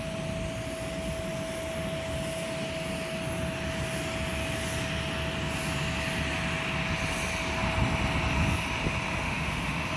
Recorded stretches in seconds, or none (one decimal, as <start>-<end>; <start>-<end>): 0.0-9.2

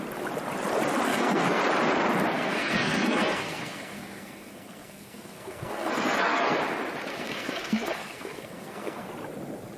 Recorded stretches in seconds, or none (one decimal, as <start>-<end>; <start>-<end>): 0.0-1.1; 1.6-2.3; 6.6-7.1; 9.1-9.8

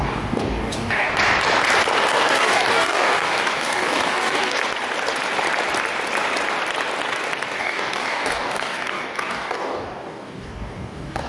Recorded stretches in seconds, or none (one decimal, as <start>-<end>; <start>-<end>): 1.1-2.1; 4.6-7.5